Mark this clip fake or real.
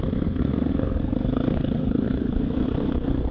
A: fake